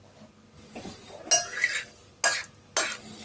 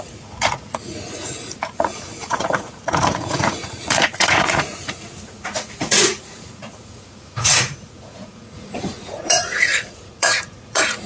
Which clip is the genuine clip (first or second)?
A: first